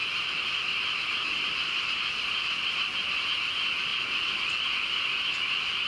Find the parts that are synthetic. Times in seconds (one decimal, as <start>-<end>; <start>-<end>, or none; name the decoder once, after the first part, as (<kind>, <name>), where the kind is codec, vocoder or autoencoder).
0.0-3.5 (vocoder, BigVGAN v2); 3.9-5.0